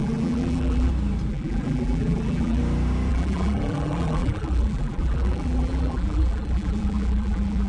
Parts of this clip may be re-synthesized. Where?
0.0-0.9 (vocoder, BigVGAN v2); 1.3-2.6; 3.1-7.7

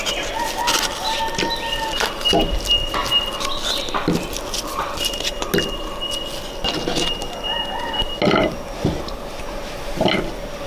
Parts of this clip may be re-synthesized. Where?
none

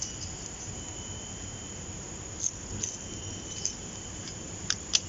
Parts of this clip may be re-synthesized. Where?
0.0-0.7 (vocoder, BigVGAN v2); 3.8-5.1